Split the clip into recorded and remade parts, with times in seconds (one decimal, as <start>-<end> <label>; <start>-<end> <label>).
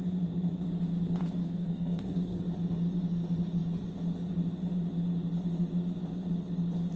0.0-1.4 recorded; 1.4-2.4 remade; 2.4-7.0 recorded